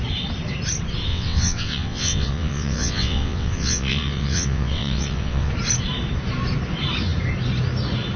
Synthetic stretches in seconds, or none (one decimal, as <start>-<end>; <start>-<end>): 1.1-5.5